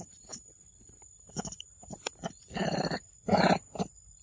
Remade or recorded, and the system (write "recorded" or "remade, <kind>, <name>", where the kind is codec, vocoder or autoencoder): remade, vocoder, BigVGAN v2